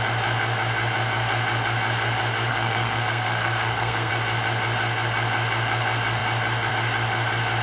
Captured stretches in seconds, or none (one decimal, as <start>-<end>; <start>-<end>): 0.0-2.5; 4.1-7.6